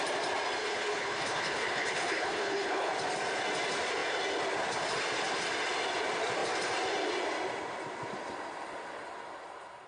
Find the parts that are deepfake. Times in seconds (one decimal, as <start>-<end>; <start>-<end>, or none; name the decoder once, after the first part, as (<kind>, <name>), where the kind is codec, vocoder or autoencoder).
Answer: 0.6-2.9 (codec, HILCodec)